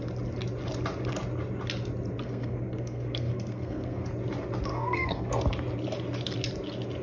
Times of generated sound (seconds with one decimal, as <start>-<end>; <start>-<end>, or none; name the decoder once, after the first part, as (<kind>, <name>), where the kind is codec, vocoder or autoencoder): 2.1-4.1 (codec, SNAC); 4.7-5.4